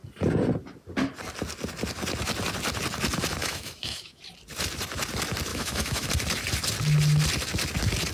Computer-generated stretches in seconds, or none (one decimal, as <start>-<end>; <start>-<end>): 3.4-4.2; 5.5-6.1